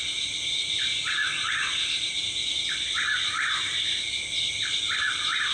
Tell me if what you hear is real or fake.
real